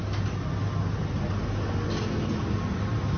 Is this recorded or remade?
recorded